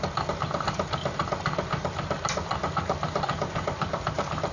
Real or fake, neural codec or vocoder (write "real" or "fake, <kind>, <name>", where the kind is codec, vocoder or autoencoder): real